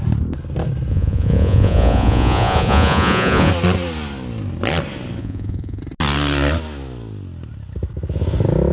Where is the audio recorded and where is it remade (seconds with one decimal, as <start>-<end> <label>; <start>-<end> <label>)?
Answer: 0.0-0.9 recorded; 0.9-3.5 remade; 3.5-5.2 recorded; 5.2-5.8 remade; 5.8-8.7 recorded